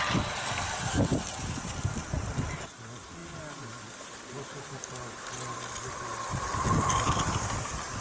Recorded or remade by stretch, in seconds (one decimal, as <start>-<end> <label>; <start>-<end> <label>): 0.0-8.0 recorded